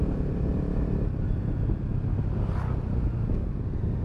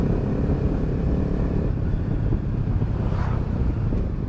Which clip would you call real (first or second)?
first